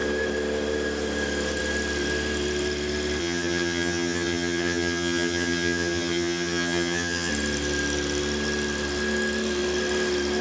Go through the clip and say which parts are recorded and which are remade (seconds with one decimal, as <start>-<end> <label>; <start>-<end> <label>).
0.0-3.2 recorded; 3.2-7.3 remade; 7.3-10.4 recorded